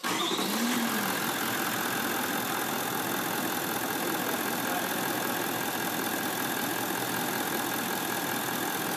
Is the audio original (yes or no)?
yes